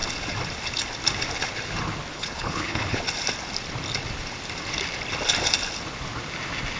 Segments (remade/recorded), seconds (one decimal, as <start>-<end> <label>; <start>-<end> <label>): 0.0-2.1 recorded; 2.1-3.0 remade; 3.0-6.8 recorded